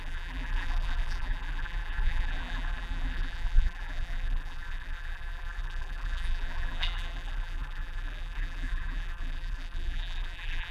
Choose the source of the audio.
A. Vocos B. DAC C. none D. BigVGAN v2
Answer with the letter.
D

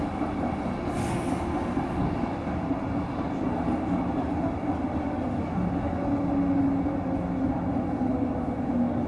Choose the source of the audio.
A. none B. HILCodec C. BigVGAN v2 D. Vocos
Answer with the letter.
A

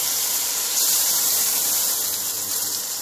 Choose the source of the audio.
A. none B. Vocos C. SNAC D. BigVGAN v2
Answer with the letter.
D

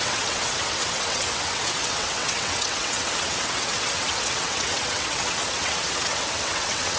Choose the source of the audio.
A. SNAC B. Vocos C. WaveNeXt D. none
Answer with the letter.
C